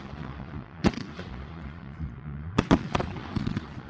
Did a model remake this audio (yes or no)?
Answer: yes